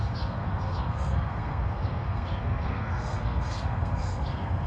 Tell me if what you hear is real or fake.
fake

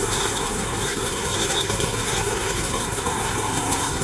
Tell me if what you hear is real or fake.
fake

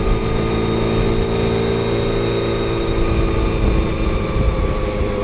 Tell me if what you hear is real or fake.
real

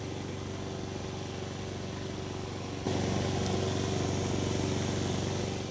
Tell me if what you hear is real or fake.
real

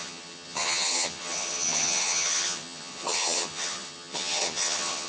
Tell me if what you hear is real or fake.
fake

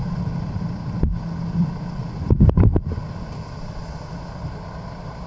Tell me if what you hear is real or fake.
real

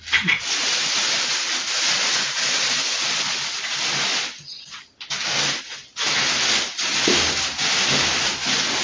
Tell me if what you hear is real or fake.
real